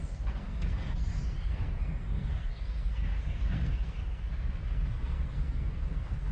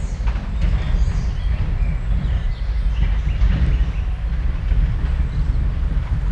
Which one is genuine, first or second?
second